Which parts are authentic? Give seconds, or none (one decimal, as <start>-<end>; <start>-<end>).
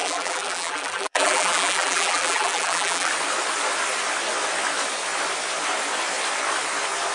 3.1-7.1